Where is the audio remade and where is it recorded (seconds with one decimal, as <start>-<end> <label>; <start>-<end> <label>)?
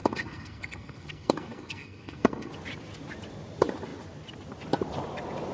0.0-2.5 remade; 2.5-5.5 recorded